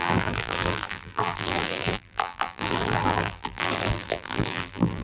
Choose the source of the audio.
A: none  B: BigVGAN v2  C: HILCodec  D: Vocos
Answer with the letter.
B